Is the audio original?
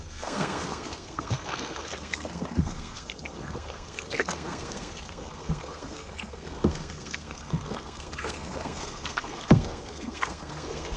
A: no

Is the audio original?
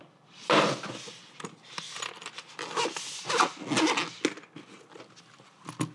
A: yes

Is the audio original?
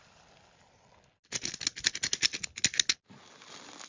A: yes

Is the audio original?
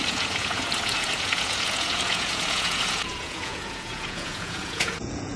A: no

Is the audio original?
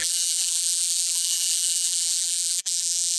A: no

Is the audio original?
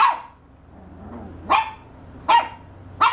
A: yes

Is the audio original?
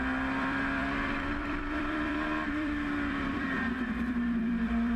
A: no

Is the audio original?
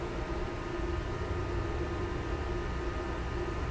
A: yes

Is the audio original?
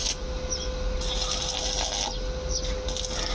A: yes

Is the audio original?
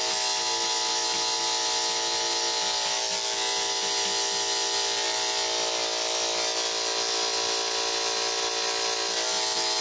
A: yes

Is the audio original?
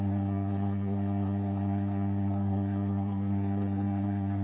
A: no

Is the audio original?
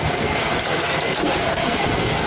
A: no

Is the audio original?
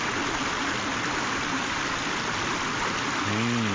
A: yes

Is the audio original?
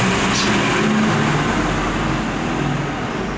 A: yes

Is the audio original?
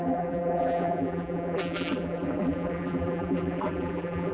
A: no